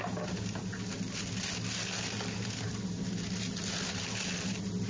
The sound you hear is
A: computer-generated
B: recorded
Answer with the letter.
B